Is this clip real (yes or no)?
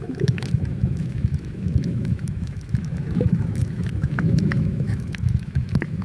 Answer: no